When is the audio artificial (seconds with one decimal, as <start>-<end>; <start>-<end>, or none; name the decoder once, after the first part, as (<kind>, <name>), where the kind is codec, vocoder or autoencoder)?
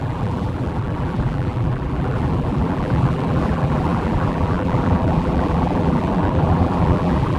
0.0-7.4 (vocoder, BigVGAN v2)